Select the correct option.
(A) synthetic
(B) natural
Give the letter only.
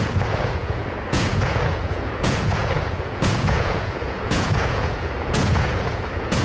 A